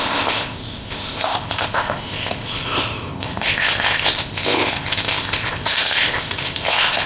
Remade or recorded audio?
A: remade